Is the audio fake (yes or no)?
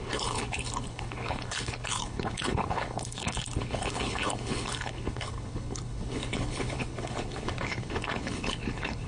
yes